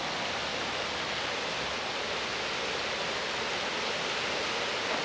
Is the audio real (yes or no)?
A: yes